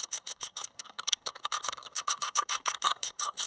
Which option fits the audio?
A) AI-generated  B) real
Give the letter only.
A